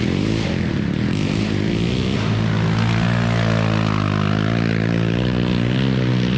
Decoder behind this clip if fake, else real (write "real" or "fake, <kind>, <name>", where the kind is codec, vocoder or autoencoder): real